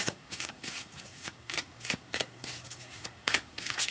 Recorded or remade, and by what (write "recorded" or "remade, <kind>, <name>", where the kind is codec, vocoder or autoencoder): remade, codec, SNAC